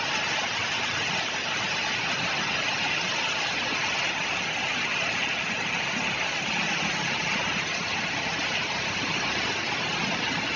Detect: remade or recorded recorded